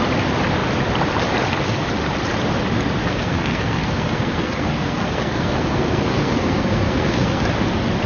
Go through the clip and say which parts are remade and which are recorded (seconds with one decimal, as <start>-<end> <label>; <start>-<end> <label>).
0.0-3.0 recorded; 3.0-7.4 remade; 7.4-8.1 recorded